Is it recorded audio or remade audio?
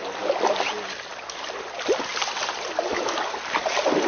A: recorded